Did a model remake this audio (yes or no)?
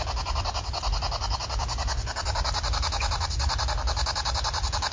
no